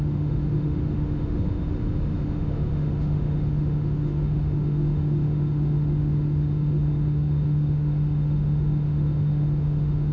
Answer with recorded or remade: remade